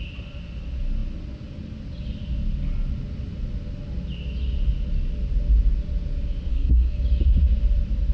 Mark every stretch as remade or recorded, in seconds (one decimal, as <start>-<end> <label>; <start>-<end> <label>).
0.0-6.5 recorded; 6.5-7.0 remade; 7.0-8.1 recorded

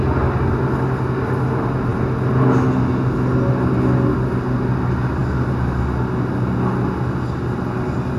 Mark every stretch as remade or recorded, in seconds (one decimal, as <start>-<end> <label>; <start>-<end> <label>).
0.0-8.2 recorded

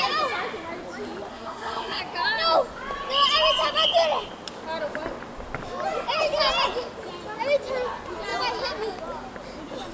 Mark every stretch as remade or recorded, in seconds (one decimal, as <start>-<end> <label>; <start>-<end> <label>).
0.0-1.3 recorded; 1.3-2.0 remade; 2.0-9.9 recorded

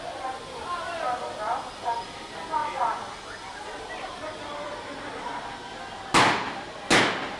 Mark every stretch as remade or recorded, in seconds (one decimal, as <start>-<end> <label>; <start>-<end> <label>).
0.0-7.4 recorded

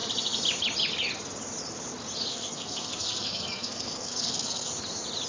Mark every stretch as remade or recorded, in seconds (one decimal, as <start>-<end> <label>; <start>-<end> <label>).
0.0-2.3 recorded; 2.3-4.7 remade; 4.7-5.3 recorded

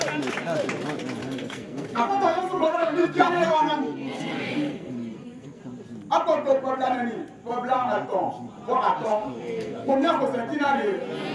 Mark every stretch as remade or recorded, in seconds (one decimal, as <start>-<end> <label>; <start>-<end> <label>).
0.0-1.2 recorded; 1.2-5.6 remade; 5.6-9.1 recorded; 9.1-10.1 remade; 10.1-11.3 recorded